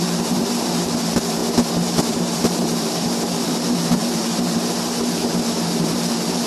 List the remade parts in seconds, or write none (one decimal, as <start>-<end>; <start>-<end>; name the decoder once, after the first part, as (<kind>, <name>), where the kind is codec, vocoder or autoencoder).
0.0-1.4 (vocoder, BigVGAN v2); 2.1-6.5